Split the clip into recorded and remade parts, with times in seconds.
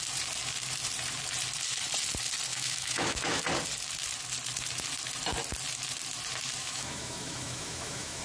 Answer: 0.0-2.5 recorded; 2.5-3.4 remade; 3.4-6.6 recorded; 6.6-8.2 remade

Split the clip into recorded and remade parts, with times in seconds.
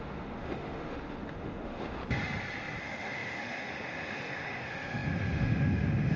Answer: 0.0-2.0 remade; 2.0-2.8 recorded; 2.8-6.2 remade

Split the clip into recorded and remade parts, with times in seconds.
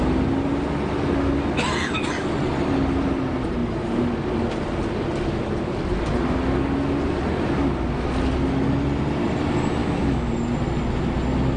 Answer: 0.0-9.8 recorded; 9.8-10.3 remade; 10.3-11.6 recorded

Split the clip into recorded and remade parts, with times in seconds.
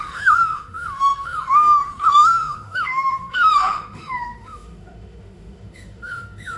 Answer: 0.0-6.6 remade